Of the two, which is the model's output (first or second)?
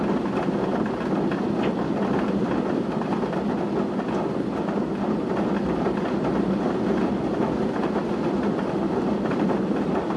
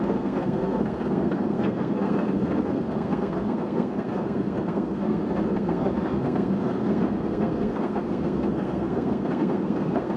second